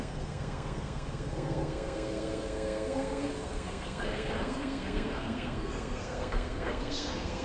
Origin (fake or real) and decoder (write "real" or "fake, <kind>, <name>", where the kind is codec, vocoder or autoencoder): fake, codec, SNAC